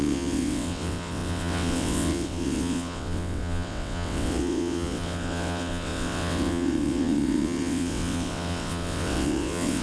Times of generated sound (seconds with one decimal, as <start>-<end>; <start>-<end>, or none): 0.0-9.8